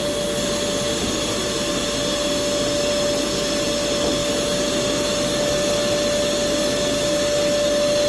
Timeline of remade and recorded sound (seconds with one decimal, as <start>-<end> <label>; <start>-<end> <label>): 0.0-8.1 recorded